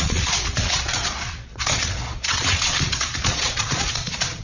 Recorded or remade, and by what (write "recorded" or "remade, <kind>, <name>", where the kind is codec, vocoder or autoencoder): remade, vocoder, Vocos